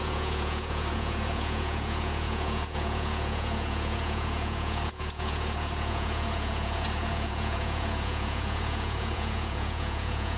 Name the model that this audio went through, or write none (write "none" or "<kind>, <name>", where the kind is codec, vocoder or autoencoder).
vocoder, Vocos